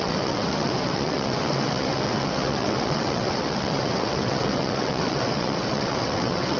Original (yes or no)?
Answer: no